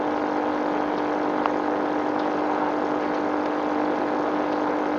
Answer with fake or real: real